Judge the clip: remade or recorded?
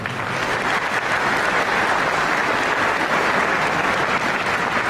recorded